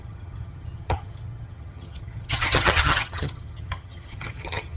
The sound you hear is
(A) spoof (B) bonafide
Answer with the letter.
A